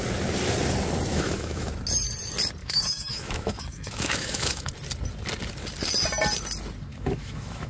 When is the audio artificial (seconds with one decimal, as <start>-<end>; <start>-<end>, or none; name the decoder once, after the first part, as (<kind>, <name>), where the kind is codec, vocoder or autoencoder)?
1.1-1.7 (autoencoder, DAC-VAE); 2.6-4.7; 6.9-7.7